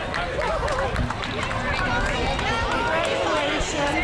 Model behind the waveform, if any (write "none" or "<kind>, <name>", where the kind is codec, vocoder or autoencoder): none